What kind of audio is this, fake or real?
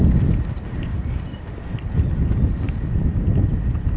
real